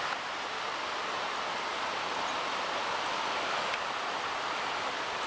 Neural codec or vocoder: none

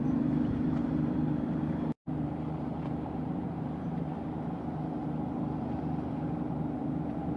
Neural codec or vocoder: vocoder, BigVGAN v2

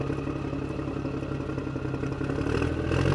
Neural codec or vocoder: none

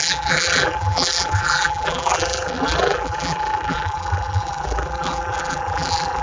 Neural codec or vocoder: vocoder, BigVGAN v2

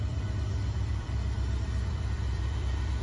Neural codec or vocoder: vocoder, BigVGAN v2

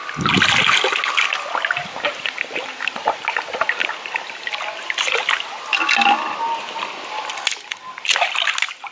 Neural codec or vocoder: none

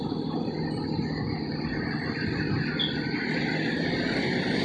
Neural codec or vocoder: none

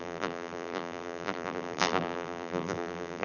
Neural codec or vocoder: vocoder, BigVGAN v2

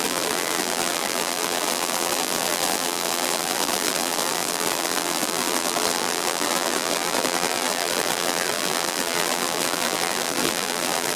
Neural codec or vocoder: vocoder, BigVGAN v2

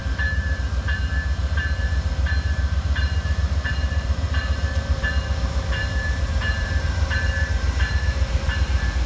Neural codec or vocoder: vocoder, BigVGAN v2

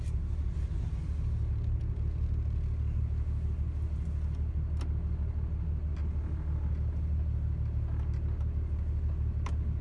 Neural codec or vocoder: none